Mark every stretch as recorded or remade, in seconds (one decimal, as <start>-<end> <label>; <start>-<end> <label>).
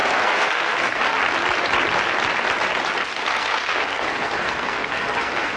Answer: 0.0-1.0 remade; 1.0-3.1 recorded; 3.1-5.6 remade